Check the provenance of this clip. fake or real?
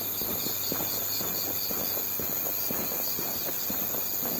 real